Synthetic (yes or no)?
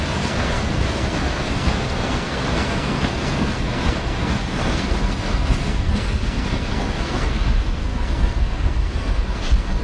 yes